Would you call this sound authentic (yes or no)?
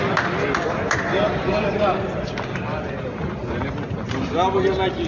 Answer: yes